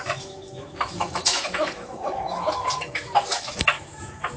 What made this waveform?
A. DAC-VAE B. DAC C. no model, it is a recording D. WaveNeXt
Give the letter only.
A